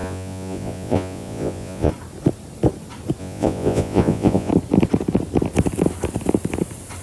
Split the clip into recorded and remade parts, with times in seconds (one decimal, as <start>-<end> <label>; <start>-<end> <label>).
0.0-1.9 remade; 1.9-3.2 recorded; 3.2-4.5 remade; 4.5-7.0 recorded